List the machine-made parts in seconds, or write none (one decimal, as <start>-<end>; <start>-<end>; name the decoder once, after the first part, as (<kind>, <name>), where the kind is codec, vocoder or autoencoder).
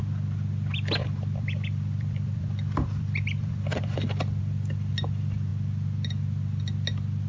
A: 1.0-4.4 (vocoder, BigVGAN v2)